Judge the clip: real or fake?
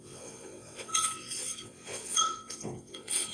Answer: fake